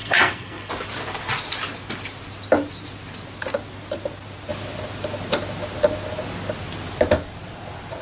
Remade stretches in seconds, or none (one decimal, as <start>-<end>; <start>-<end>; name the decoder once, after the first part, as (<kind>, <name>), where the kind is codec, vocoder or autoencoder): 0.0-0.7 (codec, SNAC)